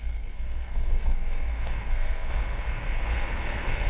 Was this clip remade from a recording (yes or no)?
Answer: yes